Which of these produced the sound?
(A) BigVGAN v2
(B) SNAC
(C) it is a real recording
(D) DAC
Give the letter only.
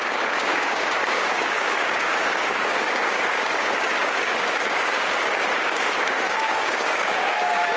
D